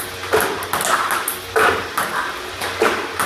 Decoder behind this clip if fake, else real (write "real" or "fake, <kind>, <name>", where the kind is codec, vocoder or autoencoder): real